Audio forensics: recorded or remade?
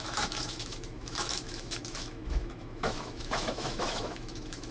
remade